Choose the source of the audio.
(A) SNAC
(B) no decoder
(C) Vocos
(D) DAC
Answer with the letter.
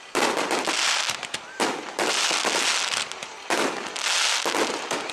B